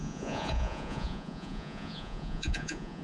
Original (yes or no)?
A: no